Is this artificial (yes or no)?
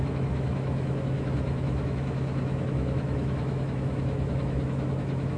yes